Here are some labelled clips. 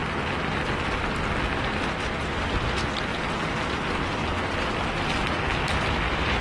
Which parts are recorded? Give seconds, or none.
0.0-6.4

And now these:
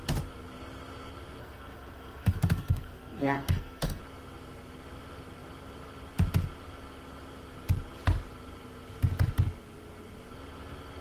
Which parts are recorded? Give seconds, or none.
0.0-1.4; 4.0-11.0

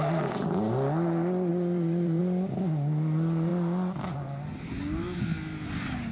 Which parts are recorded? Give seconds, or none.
0.0-1.5; 2.2-6.1

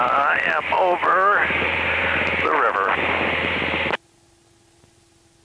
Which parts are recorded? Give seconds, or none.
0.0-5.4

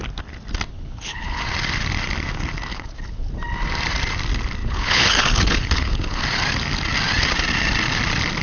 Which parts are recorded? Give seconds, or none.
0.0-0.7; 1.4-2.7; 3.3-4.6; 6.2-8.4

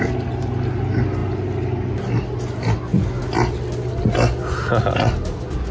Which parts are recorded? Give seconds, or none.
0.0-5.7